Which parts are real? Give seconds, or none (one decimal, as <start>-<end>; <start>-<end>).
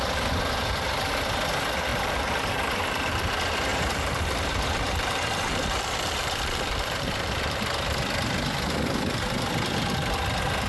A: 0.0-1.9; 3.3-3.7; 7.6-10.7